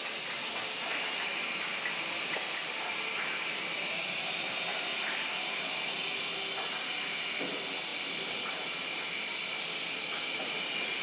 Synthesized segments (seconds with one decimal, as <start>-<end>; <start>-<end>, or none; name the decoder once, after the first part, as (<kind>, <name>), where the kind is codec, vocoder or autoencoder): 1.7-5.1 (vocoder, BigVGAN v2); 7.9-9.1